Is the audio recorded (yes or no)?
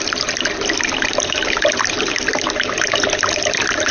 yes